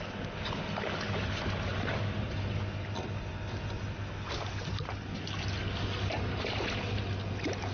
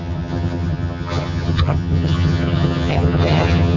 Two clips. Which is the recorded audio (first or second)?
first